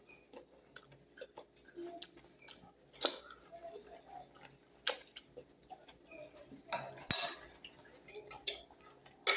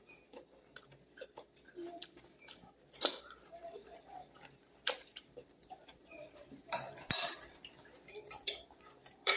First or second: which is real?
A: first